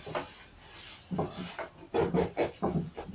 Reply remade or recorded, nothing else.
recorded